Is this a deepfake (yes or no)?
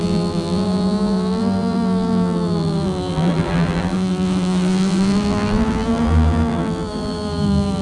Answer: yes